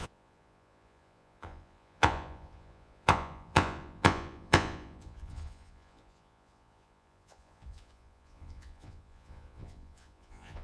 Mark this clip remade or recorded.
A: remade